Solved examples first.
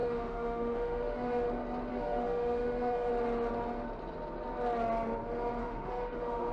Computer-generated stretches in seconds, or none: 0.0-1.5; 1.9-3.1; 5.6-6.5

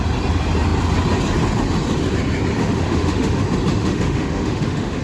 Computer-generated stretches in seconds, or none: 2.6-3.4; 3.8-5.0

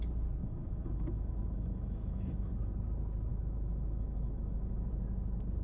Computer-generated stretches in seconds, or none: 0.4-2.5; 3.3-4.9

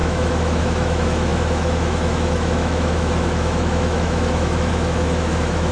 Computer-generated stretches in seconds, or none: 0.0-5.7